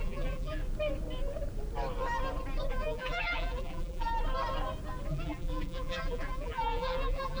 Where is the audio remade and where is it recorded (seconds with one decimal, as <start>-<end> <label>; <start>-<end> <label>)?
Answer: 0.0-0.6 remade; 0.6-2.7 recorded; 2.7-4.1 remade; 4.1-5.1 recorded; 5.1-7.4 remade